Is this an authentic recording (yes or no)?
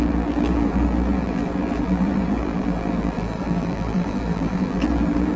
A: no